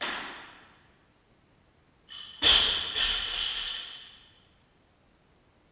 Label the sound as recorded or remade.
recorded